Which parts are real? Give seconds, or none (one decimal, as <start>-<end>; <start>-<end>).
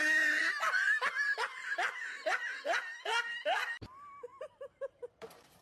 0.0-4.3